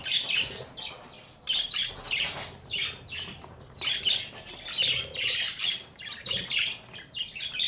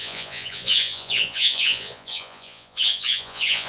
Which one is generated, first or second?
second